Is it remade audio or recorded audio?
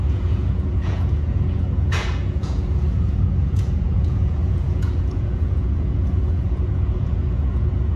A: remade